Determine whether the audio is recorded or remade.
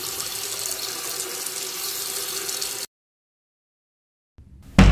recorded